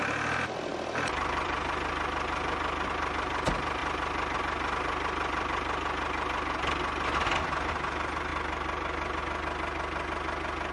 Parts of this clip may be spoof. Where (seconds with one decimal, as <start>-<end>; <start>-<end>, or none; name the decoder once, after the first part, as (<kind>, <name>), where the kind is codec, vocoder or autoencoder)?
0.7-1.9 (vocoder, BigVGAN v2); 8.3-9.2